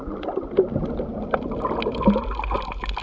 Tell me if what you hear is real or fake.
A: real